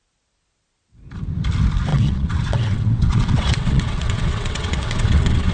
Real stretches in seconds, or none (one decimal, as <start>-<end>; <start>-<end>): 0.0-1.9